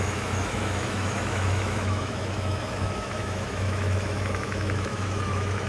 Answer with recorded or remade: remade